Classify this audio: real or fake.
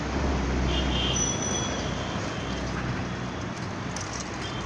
real